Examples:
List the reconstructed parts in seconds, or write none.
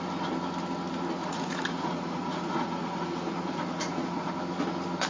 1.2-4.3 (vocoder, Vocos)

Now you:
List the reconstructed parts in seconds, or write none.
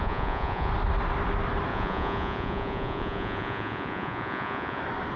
0.0-0.7 (vocoder, Vocos); 1.7-4.8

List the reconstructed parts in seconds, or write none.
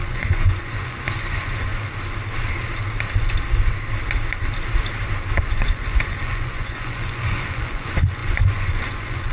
0.0-1.7 (vocoder, Vocos); 5.4-9.3